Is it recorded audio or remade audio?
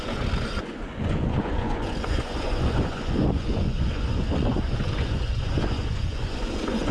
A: remade